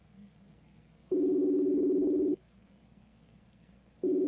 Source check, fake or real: fake